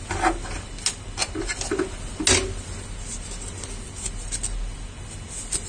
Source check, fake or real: real